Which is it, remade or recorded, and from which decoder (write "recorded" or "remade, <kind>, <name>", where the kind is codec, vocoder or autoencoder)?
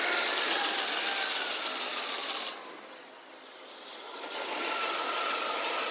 recorded